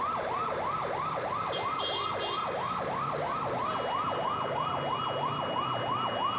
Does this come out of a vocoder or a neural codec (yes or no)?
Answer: no